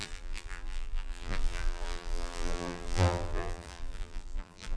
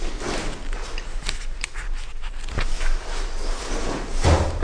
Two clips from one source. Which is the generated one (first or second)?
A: first